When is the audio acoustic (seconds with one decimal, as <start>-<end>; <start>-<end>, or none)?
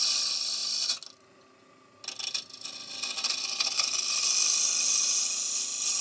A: 0.0-6.0